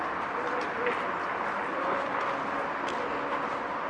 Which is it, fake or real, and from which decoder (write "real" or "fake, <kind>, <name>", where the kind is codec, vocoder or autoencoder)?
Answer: real